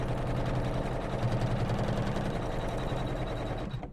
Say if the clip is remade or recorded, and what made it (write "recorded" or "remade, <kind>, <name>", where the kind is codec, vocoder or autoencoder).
recorded